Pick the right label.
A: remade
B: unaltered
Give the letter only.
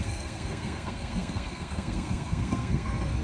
A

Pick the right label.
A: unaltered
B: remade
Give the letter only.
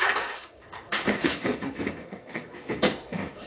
B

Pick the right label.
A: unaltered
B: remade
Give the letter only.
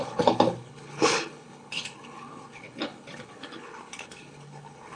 B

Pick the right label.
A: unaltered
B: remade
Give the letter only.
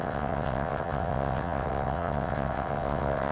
B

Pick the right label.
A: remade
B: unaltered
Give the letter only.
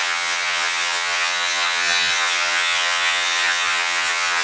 A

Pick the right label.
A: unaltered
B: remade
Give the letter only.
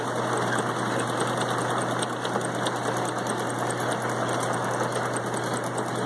A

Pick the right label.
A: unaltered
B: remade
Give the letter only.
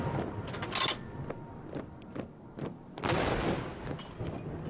A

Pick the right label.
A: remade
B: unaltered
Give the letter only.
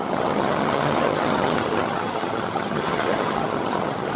A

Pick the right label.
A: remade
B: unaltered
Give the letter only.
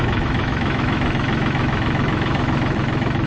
A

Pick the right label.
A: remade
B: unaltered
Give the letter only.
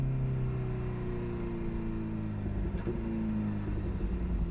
B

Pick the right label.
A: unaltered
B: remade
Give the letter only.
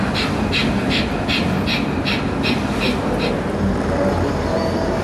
A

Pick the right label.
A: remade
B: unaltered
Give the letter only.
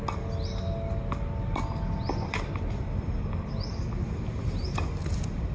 B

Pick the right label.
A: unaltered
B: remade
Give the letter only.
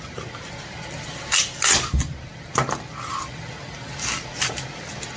A